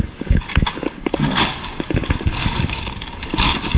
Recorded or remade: remade